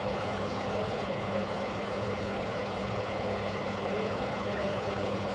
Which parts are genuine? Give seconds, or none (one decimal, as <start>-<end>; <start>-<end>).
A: none